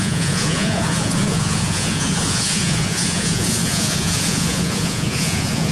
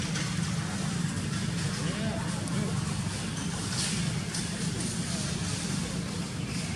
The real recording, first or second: second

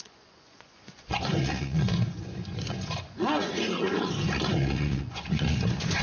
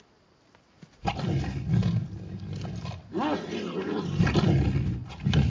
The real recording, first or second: second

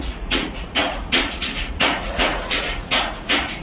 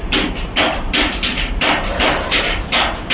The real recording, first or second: second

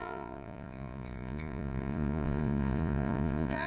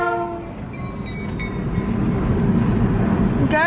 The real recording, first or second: second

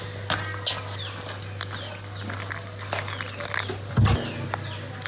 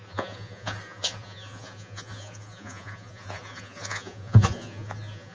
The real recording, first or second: first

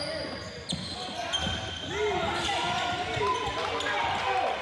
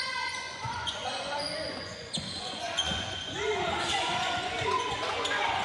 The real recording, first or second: first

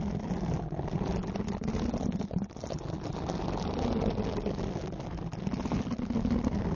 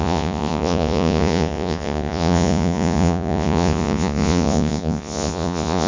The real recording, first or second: first